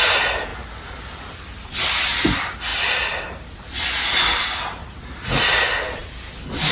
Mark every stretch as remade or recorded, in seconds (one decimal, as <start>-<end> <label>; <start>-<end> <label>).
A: 0.0-4.8 recorded; 4.8-5.4 remade; 5.4-6.7 recorded